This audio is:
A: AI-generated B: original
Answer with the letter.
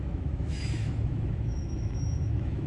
A